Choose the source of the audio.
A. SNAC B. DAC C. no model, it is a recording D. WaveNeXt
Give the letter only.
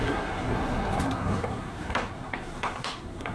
A